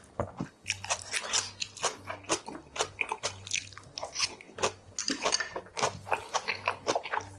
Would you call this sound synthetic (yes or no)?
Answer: no